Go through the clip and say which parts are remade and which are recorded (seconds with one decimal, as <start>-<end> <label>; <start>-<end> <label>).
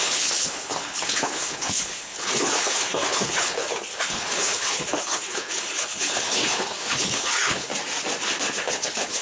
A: 0.0-7.7 remade; 7.7-8.6 recorded; 8.6-9.2 remade